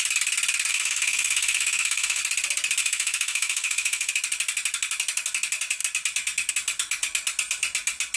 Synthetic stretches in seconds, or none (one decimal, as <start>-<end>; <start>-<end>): 0.7-2.2; 2.8-4.1